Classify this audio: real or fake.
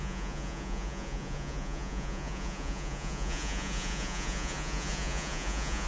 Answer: fake